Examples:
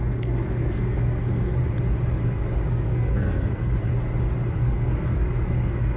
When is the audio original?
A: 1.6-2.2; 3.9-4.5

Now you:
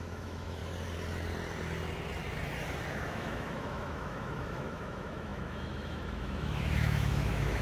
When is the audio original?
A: 0.6-2.9

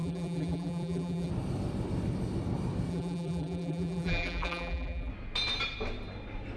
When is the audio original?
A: 1.3-2.9; 5.1-6.6

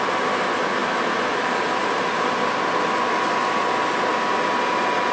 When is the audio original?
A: 0.0-5.1

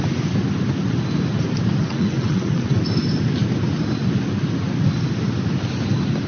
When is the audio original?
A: 0.0-1.8; 2.8-6.3

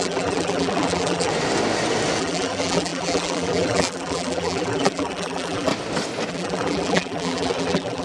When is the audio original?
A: 1.3-2.2; 5.7-6.3

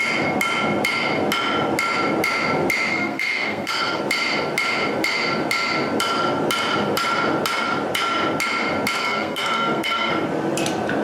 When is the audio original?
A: 0.0-2.9; 4.0-9.0; 10.1-11.0